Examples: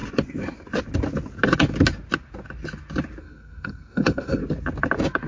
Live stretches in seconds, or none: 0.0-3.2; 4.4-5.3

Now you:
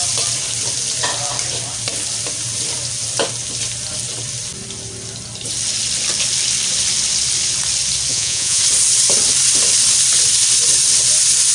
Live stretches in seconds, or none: 0.0-8.1; 8.6-11.5

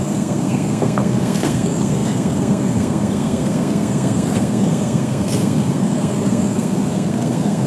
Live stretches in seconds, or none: none

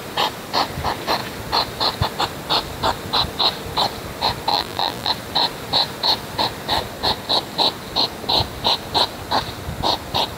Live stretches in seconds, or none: 0.0-4.5; 5.1-10.4

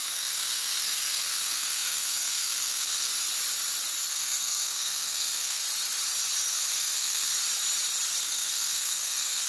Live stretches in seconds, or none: 3.1-4.1; 5.6-6.5; 7.3-8.2

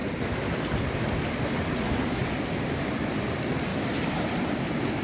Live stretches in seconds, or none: 0.0-5.0